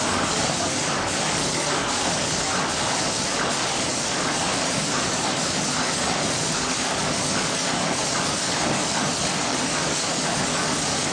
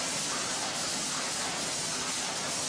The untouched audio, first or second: second